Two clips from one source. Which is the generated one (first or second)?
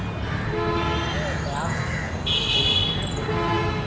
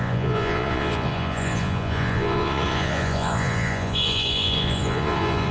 second